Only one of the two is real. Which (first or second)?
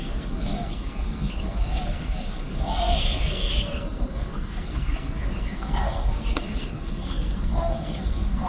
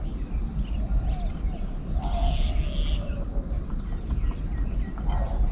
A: second